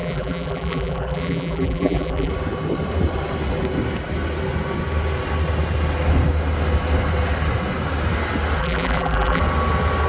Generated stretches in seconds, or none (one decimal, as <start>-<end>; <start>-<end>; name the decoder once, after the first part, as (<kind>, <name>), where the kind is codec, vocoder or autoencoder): 0.0-2.3 (vocoder, BigVGAN v2); 8.6-9.4

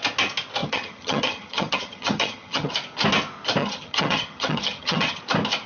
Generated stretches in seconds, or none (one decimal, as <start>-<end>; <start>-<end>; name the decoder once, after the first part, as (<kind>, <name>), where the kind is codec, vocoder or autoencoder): 0.6-2.7 (vocoder, HiFi-GAN); 3.6-5.2

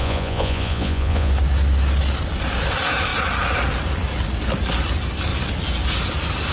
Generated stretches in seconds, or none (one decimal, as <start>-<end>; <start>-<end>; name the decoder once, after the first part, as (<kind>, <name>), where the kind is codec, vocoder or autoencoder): 0.0-1.3 (vocoder, Vocos)